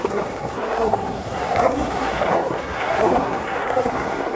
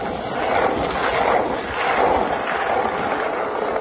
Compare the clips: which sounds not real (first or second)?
first